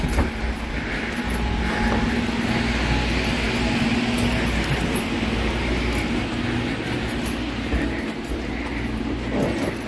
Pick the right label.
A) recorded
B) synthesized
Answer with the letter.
A